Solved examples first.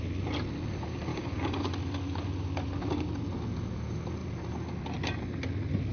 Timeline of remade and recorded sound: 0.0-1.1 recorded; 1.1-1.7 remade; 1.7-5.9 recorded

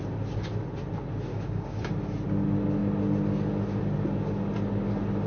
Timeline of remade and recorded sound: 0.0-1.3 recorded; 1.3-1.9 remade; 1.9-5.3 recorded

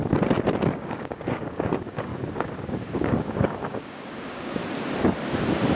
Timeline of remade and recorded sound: 0.0-0.8 recorded; 0.8-2.1 remade; 2.1-2.7 recorded; 2.7-4.6 remade; 4.6-5.7 recorded

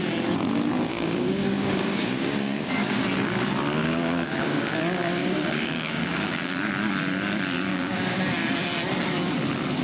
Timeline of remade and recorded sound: 0.0-0.9 recorded; 0.9-3.0 remade; 3.0-3.8 recorded; 3.8-6.5 remade; 6.5-7.7 recorded; 7.7-8.2 remade; 8.2-9.8 recorded

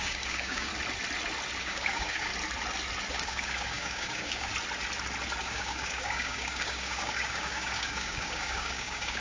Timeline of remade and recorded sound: 0.0-0.7 remade; 0.7-1.6 recorded; 1.6-2.3 remade; 2.3-3.1 recorded; 3.1-4.5 remade; 4.5-5.4 recorded; 5.4-9.2 remade

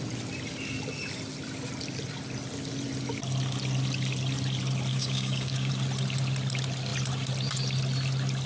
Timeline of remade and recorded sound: 0.0-4.9 recorded; 4.9-5.7 remade; 5.7-8.5 recorded